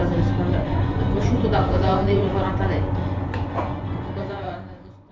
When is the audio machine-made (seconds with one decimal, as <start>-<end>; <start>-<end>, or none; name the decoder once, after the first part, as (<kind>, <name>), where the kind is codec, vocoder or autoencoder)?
0.5-5.1 (vocoder, Vocos)